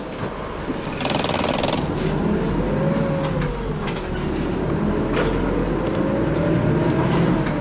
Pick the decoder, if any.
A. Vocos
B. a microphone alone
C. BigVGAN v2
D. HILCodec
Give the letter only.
B